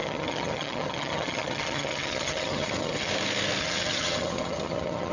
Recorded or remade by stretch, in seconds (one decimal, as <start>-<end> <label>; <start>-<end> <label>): 0.0-3.1 remade; 3.1-3.6 recorded; 3.6-5.1 remade